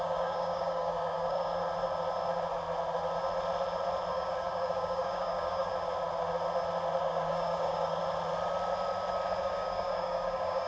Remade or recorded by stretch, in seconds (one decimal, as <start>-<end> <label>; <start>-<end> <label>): 0.0-1.6 remade; 1.6-4.1 recorded; 4.1-5.7 remade; 5.7-7.0 recorded; 7.0-8.0 remade; 8.0-9.4 recorded; 9.4-10.7 remade